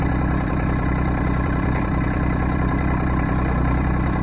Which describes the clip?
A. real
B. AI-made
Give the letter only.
B